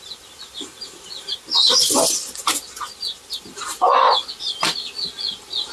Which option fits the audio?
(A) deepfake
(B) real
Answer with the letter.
B